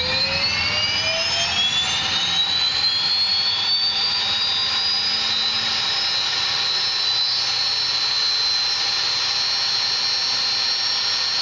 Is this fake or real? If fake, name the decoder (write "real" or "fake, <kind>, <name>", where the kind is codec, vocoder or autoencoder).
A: real